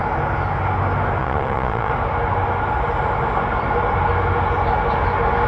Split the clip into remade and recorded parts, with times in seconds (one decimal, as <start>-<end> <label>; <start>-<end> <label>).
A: 0.0-1.2 recorded; 1.2-1.9 remade; 1.9-5.5 recorded